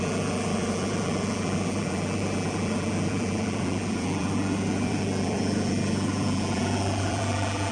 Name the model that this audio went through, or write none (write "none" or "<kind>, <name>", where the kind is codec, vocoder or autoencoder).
vocoder, BigVGAN v2